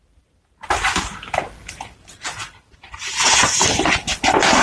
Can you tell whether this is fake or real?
real